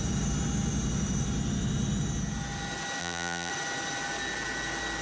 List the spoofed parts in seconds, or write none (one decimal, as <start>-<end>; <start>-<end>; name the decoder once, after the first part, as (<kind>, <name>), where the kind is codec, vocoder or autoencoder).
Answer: 3.0-3.5 (vocoder, BigVGAN v2)